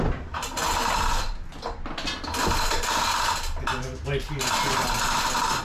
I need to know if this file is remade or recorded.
recorded